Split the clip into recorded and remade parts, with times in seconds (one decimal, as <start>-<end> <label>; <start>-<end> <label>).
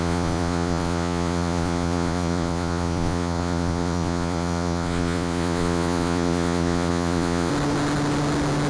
0.0-7.5 remade; 7.5-8.7 recorded